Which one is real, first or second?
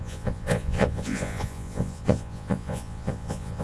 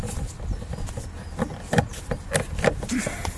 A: second